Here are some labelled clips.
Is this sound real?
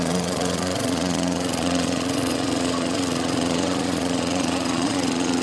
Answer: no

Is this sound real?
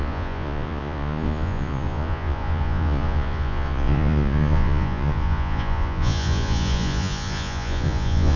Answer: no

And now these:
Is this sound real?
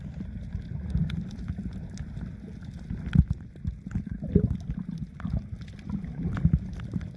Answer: yes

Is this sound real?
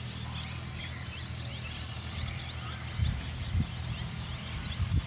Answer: yes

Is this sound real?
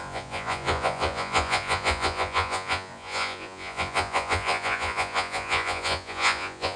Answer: no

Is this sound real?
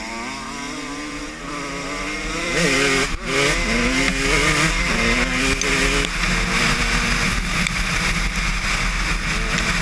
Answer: yes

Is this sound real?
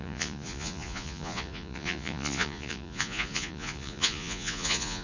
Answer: no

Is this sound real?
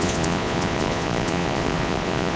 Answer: no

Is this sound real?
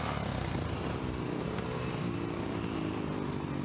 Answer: yes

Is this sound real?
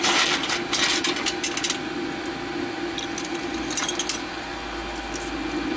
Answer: yes